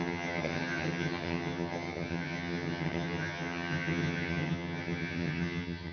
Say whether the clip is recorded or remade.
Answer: remade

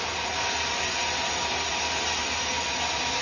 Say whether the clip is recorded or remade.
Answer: recorded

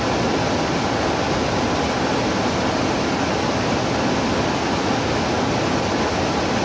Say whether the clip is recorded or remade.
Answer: recorded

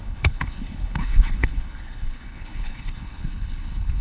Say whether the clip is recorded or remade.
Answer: remade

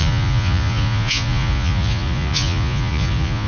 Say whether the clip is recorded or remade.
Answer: remade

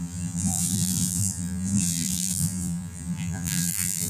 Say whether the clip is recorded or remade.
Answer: remade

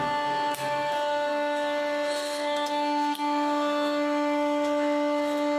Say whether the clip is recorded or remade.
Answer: remade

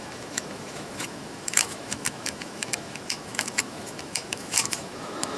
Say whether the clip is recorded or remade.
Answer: remade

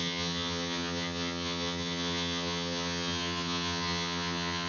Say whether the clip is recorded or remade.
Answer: remade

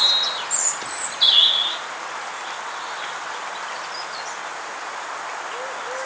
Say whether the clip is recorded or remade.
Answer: recorded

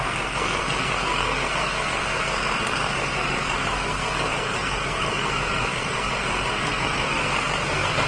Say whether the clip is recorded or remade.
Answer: remade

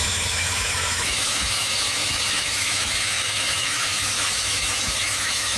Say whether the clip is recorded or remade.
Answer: remade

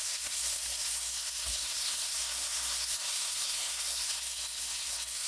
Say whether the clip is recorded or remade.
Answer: remade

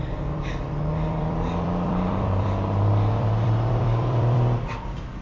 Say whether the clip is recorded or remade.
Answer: remade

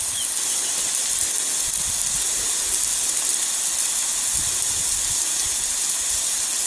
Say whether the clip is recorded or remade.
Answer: recorded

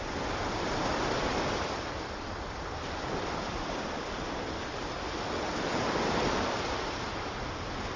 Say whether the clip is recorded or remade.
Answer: remade